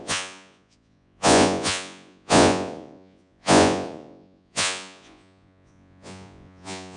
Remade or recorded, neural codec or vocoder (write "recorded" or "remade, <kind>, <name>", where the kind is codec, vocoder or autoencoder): remade, vocoder, Vocos